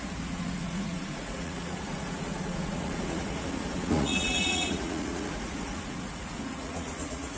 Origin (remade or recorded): remade